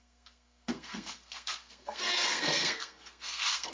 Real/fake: fake